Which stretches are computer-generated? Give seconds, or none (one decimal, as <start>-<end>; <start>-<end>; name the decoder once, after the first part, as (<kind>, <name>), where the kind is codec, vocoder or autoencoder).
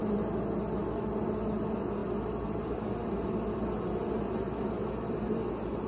none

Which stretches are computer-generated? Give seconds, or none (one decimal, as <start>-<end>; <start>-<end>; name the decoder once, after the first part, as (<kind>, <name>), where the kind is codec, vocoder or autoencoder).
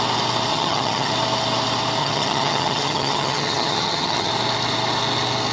0.5-1.1 (vocoder, HiFi-GAN); 2.0-4.3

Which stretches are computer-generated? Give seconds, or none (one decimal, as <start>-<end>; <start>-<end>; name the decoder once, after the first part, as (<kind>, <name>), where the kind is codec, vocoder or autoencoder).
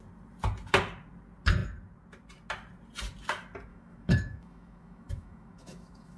3.7-6.2 (autoencoder, DAC-VAE)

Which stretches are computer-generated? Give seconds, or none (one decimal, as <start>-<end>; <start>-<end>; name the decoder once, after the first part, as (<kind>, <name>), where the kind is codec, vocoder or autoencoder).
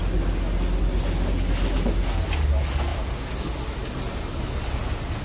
2.9-3.4 (vocoder, BigVGAN v2)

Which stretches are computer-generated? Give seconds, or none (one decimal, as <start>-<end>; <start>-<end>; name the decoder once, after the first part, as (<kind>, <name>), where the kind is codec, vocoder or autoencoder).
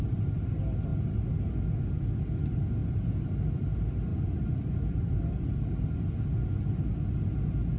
2.8-3.3 (vocoder, BigVGAN v2); 4.1-5.2